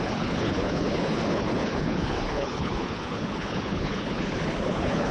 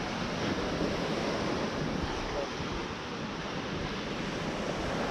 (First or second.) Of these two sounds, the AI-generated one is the first